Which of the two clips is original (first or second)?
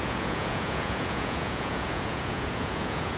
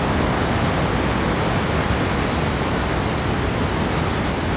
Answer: second